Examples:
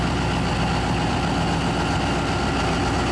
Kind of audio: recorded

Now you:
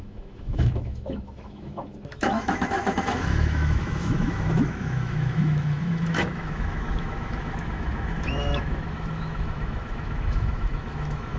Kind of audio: remade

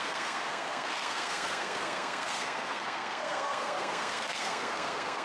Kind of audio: remade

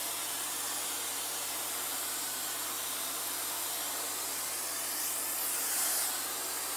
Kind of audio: recorded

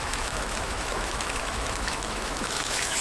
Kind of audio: remade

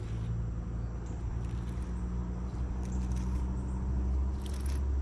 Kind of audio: recorded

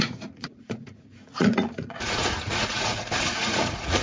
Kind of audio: remade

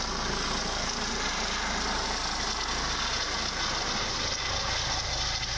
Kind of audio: recorded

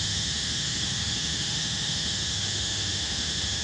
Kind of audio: remade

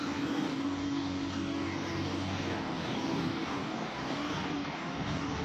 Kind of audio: remade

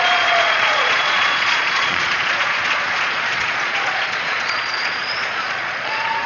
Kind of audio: remade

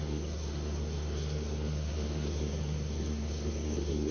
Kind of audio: remade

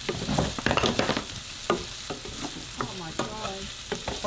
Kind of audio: recorded